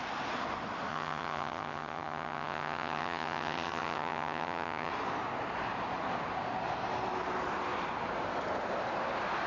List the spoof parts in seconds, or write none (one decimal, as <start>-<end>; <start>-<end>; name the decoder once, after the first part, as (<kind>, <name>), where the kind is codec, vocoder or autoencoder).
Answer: 0.9-4.9 (vocoder, HiFi-GAN)